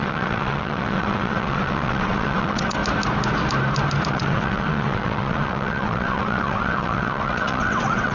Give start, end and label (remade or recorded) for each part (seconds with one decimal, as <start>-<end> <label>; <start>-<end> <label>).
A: 0.0-2.8 remade; 2.8-4.1 recorded; 4.1-8.1 remade

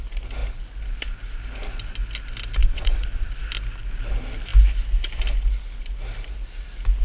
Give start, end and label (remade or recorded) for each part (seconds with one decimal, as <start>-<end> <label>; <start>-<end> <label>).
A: 0.0-2.6 recorded; 2.6-3.3 remade; 3.3-7.0 recorded

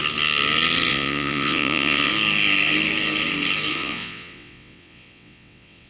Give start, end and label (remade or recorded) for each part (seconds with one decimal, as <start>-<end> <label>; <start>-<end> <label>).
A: 0.0-0.9 recorded; 0.9-2.1 remade; 2.1-3.7 recorded; 3.7-5.9 remade

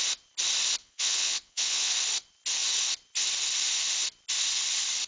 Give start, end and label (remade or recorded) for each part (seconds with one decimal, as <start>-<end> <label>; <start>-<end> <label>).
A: 0.0-0.8 recorded; 0.8-1.9 remade; 1.9-5.1 recorded